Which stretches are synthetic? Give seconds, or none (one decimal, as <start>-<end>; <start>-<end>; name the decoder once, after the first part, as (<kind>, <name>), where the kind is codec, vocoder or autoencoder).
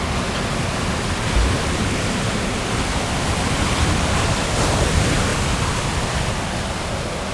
none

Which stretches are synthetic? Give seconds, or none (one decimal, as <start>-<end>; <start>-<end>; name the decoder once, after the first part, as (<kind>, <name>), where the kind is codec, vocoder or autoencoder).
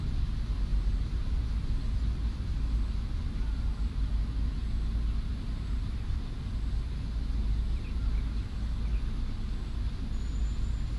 5.3-6.3 (vocoder, BigVGAN v2)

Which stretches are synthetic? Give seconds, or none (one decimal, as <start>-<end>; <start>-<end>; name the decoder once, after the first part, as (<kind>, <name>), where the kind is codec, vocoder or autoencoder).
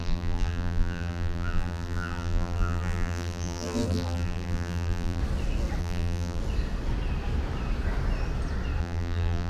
0.0-5.2 (vocoder, BigVGAN v2); 5.8-6.4; 8.8-9.5